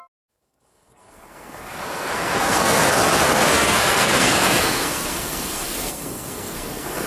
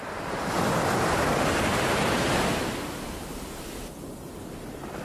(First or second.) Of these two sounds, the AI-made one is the first